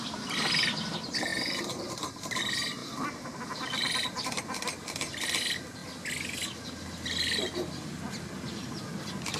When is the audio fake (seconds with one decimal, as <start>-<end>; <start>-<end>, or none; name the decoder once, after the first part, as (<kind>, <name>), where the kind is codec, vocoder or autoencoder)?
1.3-2.4 (vocoder, BigVGAN v2); 2.8-4.4